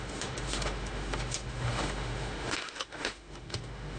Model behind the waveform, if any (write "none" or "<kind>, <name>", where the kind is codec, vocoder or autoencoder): autoencoder, DAC-VAE